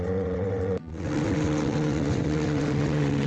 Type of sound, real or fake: fake